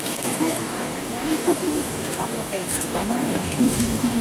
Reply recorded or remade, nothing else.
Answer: remade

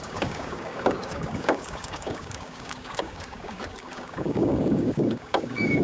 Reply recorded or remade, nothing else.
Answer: remade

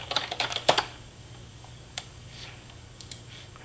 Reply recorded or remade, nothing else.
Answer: remade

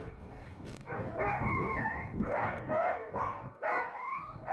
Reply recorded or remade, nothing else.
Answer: remade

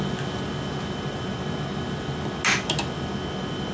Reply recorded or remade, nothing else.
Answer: recorded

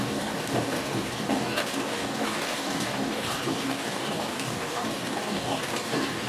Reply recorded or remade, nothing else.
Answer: remade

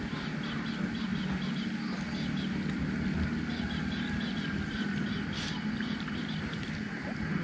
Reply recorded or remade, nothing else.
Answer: recorded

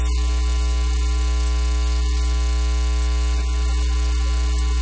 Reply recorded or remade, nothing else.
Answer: recorded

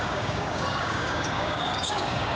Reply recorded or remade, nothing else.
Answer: remade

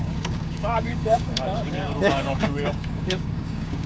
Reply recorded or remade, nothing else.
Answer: remade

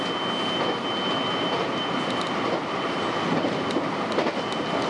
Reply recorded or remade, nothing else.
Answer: recorded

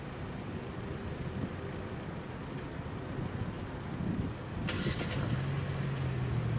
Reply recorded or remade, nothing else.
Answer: recorded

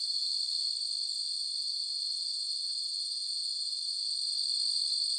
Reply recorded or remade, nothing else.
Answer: recorded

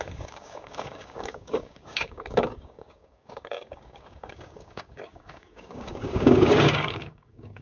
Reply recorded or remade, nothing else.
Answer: remade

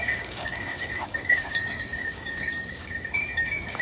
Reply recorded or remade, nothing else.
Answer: remade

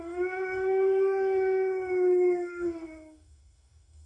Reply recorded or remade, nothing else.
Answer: remade